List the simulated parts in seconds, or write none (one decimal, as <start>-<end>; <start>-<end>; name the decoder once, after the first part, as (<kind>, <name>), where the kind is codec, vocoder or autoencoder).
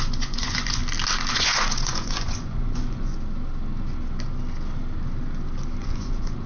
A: 0.0-0.8 (vocoder, Vocos); 1.3-3.1; 5.8-6.5